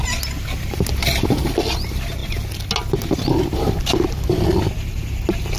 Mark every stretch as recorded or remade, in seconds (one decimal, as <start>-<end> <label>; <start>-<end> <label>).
0.0-5.6 recorded